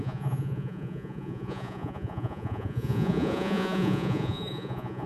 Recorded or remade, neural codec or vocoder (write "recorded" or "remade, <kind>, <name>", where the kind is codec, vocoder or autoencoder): remade, vocoder, Vocos